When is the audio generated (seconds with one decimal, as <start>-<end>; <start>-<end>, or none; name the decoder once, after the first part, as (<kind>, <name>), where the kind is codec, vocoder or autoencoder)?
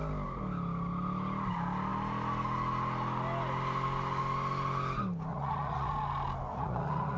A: 5.3-5.9 (vocoder, Vocos); 6.5-7.2